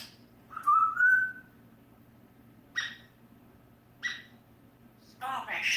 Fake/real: fake